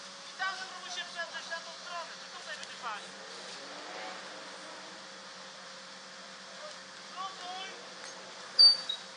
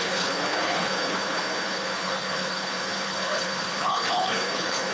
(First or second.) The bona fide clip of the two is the first